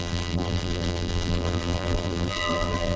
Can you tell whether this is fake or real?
fake